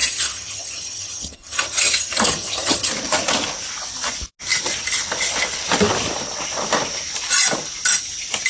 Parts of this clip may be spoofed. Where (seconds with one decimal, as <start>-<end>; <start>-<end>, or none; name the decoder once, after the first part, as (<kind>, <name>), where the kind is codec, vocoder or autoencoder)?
0.0-2.9 (vocoder, HiFi-GAN)